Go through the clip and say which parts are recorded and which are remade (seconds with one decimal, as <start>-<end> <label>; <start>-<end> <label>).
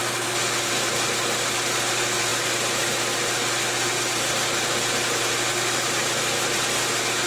0.0-7.3 recorded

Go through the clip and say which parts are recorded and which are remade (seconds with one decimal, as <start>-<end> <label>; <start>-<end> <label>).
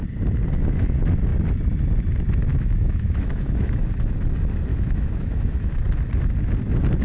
0.0-2.5 recorded; 2.5-3.8 remade; 3.8-4.7 recorded; 4.7-5.8 remade; 5.8-7.0 recorded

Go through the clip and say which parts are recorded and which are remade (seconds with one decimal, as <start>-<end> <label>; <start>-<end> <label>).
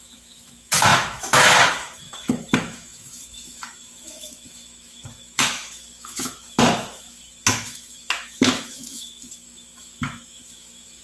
0.0-11.0 remade